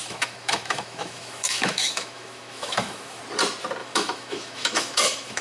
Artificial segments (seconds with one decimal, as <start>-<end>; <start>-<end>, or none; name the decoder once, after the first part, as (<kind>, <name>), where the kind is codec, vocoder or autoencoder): 0.0-3.2 (autoencoder, DAC-VAE); 3.8-5.4